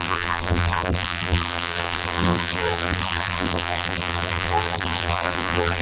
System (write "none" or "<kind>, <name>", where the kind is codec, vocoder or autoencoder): vocoder, BigVGAN v2